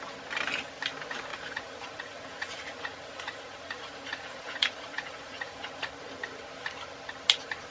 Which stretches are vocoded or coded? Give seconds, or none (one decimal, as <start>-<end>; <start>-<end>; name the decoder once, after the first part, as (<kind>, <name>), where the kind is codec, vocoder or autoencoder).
1.3-5.9 (vocoder, Vocos)